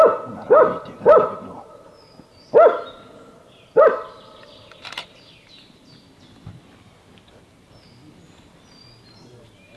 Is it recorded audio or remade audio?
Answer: recorded